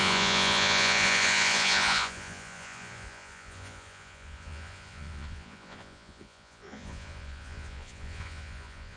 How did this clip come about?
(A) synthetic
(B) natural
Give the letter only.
A